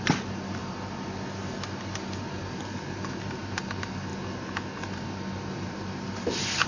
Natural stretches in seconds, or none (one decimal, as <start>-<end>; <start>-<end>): 0.6-3.2; 4.1-5.5